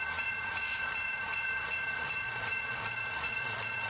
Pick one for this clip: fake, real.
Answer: fake